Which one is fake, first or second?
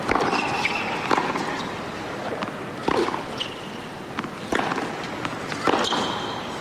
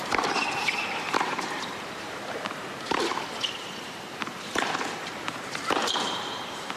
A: second